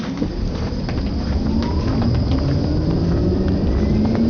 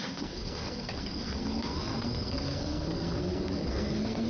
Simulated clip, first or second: second